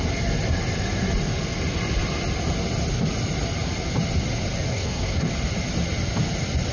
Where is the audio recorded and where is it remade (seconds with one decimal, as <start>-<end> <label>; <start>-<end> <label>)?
0.0-4.7 recorded; 4.7-5.3 remade; 5.3-6.7 recorded

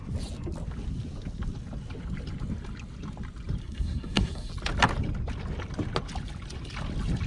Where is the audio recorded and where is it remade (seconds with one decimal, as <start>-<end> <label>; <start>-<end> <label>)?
0.0-3.6 recorded; 3.6-4.5 remade; 4.5-7.3 recorded

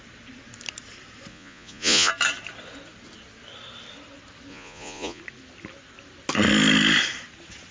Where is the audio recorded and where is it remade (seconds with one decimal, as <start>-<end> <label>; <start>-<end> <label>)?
0.0-1.3 recorded; 1.3-2.1 remade; 2.1-4.5 recorded; 4.5-5.2 remade; 5.2-7.7 recorded

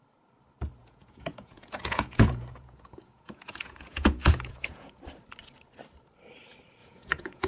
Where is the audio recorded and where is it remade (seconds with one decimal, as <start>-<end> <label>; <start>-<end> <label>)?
0.0-0.8 recorded; 0.8-5.0 remade; 5.0-6.8 recorded; 6.8-7.5 remade